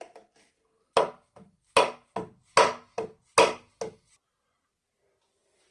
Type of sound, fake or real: real